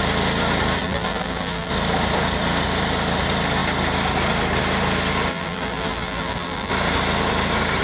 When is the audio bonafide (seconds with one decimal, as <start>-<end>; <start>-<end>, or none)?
0.0-0.8; 1.7-5.3; 6.7-7.8